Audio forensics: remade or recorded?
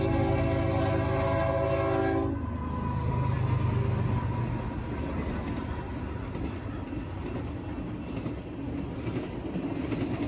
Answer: recorded